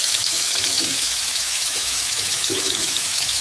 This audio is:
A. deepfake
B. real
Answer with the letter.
A